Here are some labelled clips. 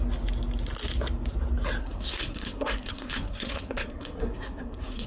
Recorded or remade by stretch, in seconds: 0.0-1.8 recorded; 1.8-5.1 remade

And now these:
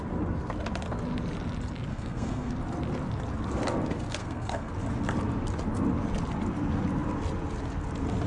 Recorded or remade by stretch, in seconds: 0.0-1.9 recorded; 1.9-2.5 remade; 2.5-4.2 recorded; 4.2-4.7 remade; 4.7-8.3 recorded

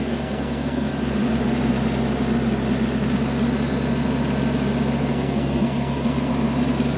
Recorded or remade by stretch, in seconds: 0.0-0.9 remade; 0.9-5.1 recorded; 5.1-6.3 remade; 6.3-7.0 recorded

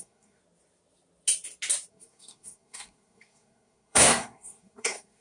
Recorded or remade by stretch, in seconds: 0.0-0.4 remade; 0.4-1.9 recorded; 1.9-5.2 remade